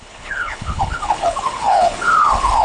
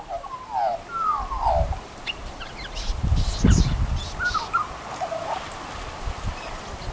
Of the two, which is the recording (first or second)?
second